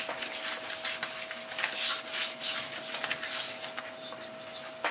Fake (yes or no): no